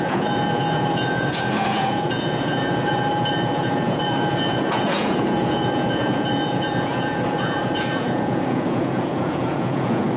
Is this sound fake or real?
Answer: fake